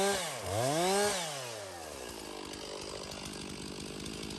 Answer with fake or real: real